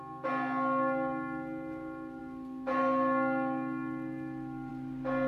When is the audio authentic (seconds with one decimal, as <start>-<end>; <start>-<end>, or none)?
0.0-5.3